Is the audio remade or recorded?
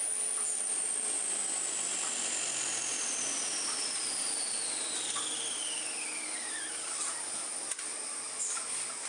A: recorded